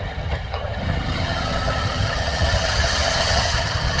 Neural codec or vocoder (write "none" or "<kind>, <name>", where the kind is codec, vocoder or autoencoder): vocoder, HiFi-GAN